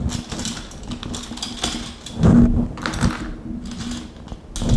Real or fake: real